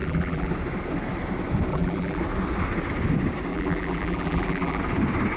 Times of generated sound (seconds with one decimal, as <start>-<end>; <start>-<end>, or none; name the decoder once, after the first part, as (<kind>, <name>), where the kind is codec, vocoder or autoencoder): 0.0-0.5 (vocoder, BigVGAN v2); 1.7-2.2; 3.5-4.8